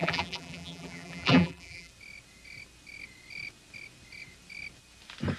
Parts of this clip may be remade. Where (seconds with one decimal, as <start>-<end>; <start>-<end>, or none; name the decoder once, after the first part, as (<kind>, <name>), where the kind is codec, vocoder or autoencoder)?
0.0-1.9 (vocoder, BigVGAN v2)